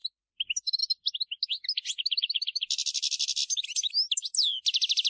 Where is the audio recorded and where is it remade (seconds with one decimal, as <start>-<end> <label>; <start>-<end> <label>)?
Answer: 0.0-3.4 recorded; 3.4-3.9 remade; 3.9-5.1 recorded